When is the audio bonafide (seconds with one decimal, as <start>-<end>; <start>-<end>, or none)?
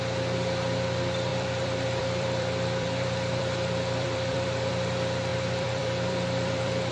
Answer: 0.0-1.3; 4.7-5.3